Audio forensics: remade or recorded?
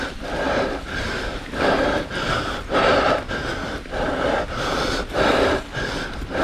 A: remade